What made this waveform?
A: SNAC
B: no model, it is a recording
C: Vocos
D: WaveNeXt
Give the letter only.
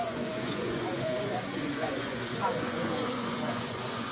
C